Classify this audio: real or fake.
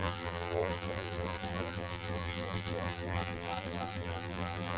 fake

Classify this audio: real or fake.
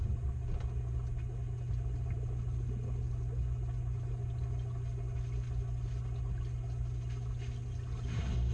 real